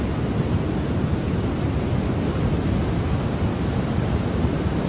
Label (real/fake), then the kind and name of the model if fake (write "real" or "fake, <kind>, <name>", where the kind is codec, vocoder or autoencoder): real